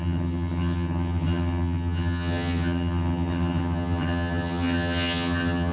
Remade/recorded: remade